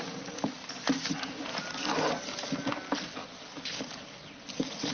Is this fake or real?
real